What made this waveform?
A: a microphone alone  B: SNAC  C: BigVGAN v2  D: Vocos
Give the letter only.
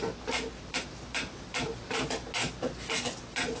A